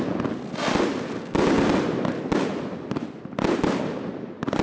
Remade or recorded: recorded